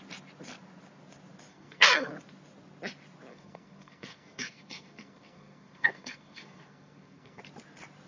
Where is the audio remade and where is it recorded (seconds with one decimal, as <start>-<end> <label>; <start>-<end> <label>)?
0.0-1.5 recorded; 1.5-2.1 remade; 2.1-3.3 recorded; 3.3-7.4 remade; 7.4-8.1 recorded